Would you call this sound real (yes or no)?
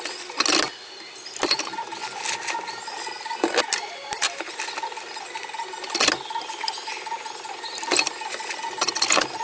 yes